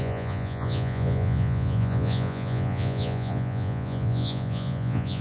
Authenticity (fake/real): fake